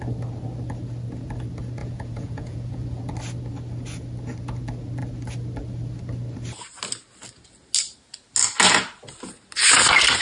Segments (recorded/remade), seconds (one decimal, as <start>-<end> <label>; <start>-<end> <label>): 0.0-1.8 recorded; 1.8-3.0 remade; 3.0-10.2 recorded